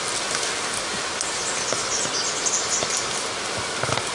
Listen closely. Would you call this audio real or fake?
real